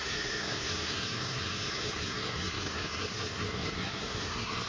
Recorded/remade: remade